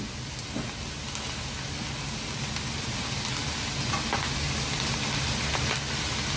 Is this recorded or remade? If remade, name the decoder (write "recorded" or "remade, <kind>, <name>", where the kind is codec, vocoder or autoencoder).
recorded